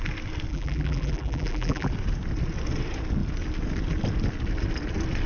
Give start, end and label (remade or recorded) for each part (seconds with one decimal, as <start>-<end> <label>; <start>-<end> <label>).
0.0-0.5 recorded; 0.5-1.9 remade; 1.9-5.3 recorded